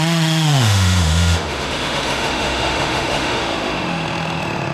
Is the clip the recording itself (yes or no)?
no